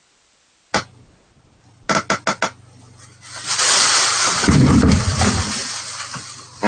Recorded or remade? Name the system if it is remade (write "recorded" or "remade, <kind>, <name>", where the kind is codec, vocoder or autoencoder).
recorded